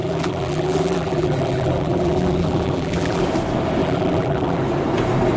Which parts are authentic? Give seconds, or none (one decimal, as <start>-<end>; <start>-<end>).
3.2-3.8; 4.6-5.4